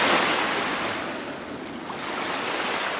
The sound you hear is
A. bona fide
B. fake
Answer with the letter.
A